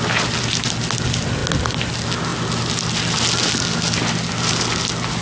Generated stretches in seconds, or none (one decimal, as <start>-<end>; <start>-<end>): none